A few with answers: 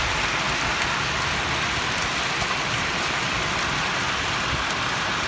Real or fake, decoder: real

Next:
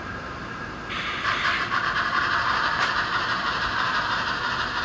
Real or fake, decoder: fake, vocoder, BigVGAN v2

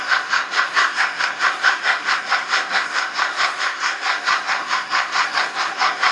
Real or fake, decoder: fake, codec, SNAC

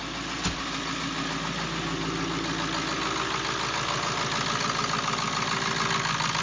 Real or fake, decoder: real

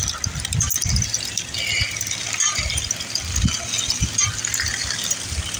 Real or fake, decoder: real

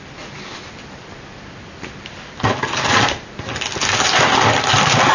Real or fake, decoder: real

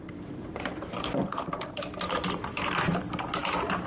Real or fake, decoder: fake, vocoder, BigVGAN v2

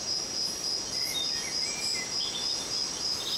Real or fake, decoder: real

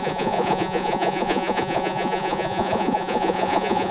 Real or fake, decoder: fake, vocoder, Vocos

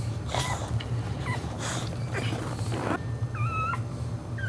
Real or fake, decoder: real